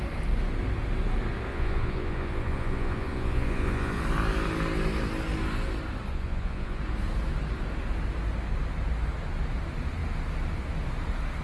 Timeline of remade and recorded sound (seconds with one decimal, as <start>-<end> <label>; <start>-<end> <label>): 0.0-1.5 recorded; 1.5-4.0 remade; 4.0-6.1 recorded; 6.1-6.8 remade; 6.8-11.4 recorded